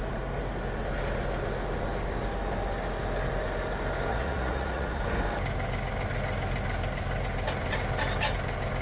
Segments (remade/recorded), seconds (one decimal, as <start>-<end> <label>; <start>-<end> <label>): 0.0-4.1 recorded; 4.1-5.0 remade; 5.0-8.8 recorded

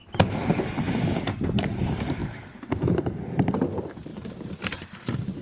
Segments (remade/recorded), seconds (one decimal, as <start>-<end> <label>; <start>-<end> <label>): 0.0-0.7 remade; 0.7-4.1 recorded; 4.1-4.9 remade; 4.9-5.4 recorded

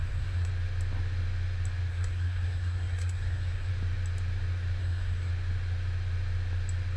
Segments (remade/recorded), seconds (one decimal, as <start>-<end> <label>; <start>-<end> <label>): 0.0-0.5 remade; 0.5-1.9 recorded; 1.9-3.7 remade; 3.7-4.8 recorded; 4.8-5.3 remade; 5.3-7.0 recorded